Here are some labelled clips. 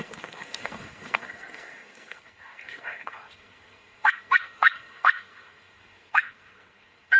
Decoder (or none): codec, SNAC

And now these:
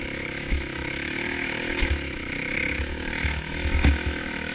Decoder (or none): autoencoder, DAC-VAE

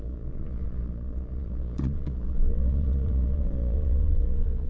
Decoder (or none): vocoder, Vocos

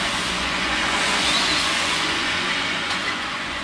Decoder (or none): vocoder, Vocos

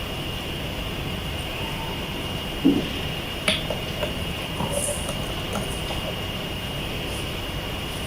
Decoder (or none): vocoder, BigVGAN v2